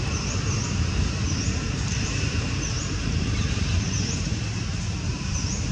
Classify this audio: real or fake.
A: fake